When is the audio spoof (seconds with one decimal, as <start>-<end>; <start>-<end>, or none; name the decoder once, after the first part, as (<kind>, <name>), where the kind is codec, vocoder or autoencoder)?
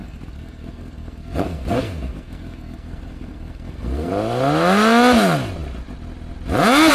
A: 0.0-4.1 (codec, SNAC)